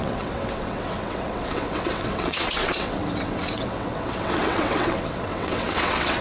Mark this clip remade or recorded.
remade